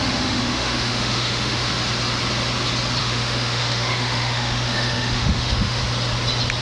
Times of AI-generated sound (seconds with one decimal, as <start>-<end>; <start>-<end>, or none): 0.0-1.7; 3.0-5.8